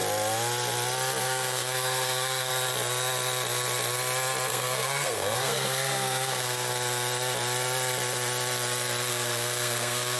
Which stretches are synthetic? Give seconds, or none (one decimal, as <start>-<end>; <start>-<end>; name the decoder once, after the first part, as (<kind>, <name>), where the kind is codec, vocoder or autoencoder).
1.2-2.5 (codec, SNAC); 4.5-6.7; 9.1-10.2